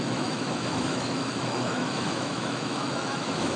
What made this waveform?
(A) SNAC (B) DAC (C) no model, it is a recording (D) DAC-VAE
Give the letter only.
D